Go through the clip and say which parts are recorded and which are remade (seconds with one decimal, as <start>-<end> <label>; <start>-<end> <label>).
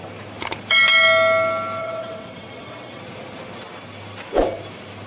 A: 0.0-1.8 recorded; 1.8-3.0 remade; 3.0-5.1 recorded